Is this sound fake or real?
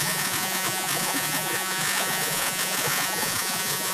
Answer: fake